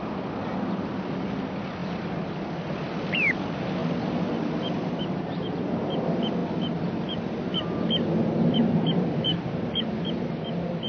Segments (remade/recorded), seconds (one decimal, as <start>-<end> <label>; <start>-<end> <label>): 0.0-10.9 recorded